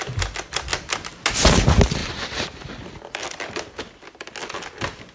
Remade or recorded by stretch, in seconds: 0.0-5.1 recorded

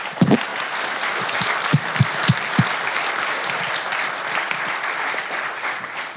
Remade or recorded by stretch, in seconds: 0.0-0.5 recorded; 0.5-2.1 remade; 2.1-4.0 recorded; 4.0-5.4 remade; 5.4-6.2 recorded

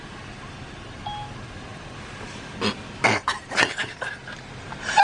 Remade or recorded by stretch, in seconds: 0.0-5.0 recorded

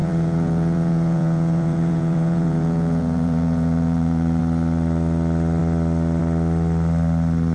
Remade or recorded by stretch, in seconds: 0.0-4.4 remade; 4.4-7.5 recorded

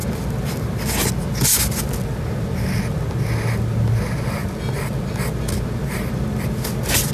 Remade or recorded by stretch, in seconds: 0.0-7.1 recorded

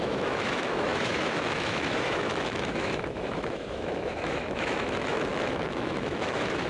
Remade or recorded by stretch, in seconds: 0.0-6.7 remade

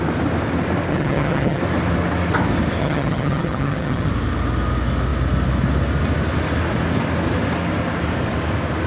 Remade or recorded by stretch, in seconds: 0.0-0.9 recorded; 0.9-1.6 remade; 1.6-2.8 recorded; 2.8-4.1 remade; 4.1-8.9 recorded

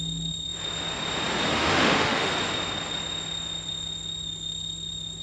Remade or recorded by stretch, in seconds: 0.0-1.5 recorded; 1.5-2.3 remade; 2.3-5.2 recorded